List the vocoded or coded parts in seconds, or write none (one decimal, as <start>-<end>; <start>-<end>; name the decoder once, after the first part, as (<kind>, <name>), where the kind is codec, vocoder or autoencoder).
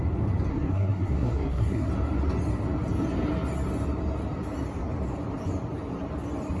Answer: 0.5-1.9 (codec, SNAC)